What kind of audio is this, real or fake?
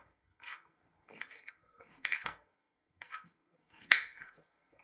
fake